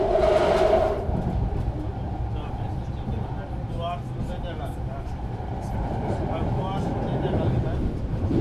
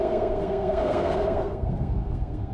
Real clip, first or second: first